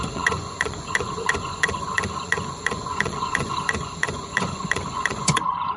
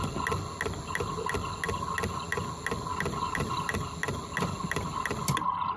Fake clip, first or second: first